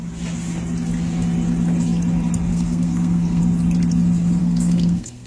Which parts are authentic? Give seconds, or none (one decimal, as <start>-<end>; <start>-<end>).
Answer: 0.0-2.5; 3.4-4.4